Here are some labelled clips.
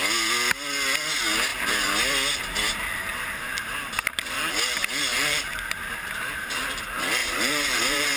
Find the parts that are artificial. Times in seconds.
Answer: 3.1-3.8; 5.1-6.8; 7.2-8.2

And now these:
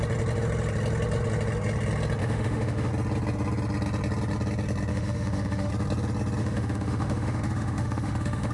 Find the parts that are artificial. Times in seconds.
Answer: 2.2-2.9; 4.9-5.7; 6.4-8.5